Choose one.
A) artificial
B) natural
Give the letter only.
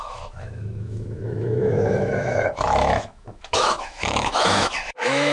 A